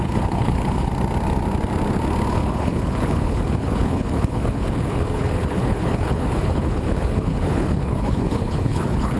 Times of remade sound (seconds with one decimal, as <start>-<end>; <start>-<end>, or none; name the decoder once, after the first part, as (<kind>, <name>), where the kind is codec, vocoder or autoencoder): 0.0-0.9 (codec, HILCodec); 2.3-9.2